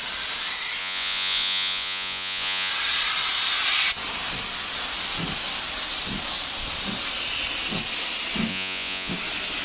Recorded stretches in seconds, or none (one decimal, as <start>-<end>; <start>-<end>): 0.0-0.8; 2.7-8.5; 9.1-9.6